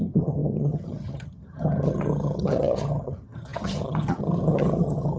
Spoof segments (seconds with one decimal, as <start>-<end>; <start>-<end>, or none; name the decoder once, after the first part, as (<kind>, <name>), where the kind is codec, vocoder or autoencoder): 0.0-5.2 (vocoder, HiFi-GAN)

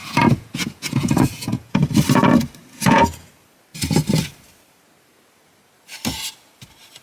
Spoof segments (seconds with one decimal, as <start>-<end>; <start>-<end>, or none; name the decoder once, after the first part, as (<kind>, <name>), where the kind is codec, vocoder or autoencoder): 0.0-1.8 (vocoder, Vocos); 2.6-3.3

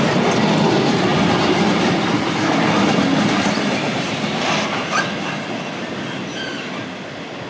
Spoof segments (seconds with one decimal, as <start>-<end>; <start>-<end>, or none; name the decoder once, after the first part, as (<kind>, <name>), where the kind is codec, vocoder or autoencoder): 1.1-2.2 (vocoder, BigVGAN v2); 3.1-5.0; 6.5-7.5

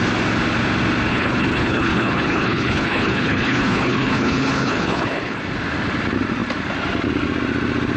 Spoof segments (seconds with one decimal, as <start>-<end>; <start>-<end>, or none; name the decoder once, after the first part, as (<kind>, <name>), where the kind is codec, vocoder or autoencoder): 1.1-5.4 (codec, HILCodec)

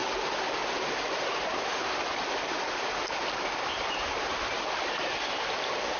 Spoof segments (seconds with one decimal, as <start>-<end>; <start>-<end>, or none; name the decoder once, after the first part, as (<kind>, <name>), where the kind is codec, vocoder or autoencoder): none

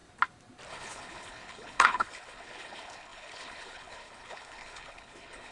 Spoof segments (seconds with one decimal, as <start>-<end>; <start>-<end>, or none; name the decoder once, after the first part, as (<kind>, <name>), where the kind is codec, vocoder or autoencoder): 0.7-5.5 (codec, HILCodec)

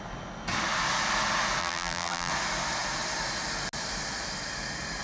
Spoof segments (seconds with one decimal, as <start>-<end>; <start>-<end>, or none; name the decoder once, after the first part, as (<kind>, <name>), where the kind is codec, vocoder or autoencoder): 1.6-2.3 (vocoder, BigVGAN v2)

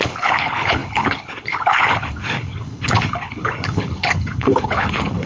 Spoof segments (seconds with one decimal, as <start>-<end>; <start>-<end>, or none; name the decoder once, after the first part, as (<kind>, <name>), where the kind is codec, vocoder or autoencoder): 0.0-5.3 (codec, HILCodec)